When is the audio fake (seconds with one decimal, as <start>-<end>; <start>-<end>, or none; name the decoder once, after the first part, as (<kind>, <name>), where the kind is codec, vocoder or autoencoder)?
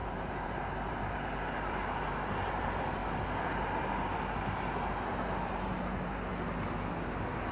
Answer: 0.0-3.0 (vocoder, BigVGAN v2); 5.3-7.5